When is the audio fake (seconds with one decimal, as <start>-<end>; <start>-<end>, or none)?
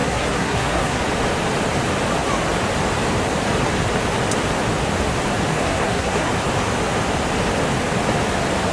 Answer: 0.0-1.0; 5.5-6.3